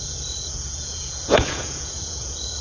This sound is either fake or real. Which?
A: fake